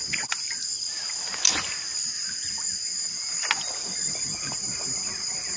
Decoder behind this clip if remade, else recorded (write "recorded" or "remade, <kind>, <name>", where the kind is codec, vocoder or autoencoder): recorded